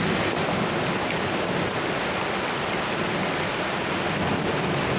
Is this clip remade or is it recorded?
recorded